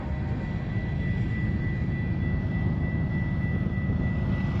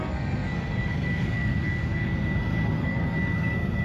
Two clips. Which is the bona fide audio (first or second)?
first